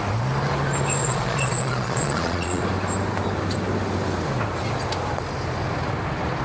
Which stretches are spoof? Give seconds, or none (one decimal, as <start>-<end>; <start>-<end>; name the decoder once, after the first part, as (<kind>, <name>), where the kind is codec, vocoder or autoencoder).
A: 1.0-2.6 (vocoder, Vocos)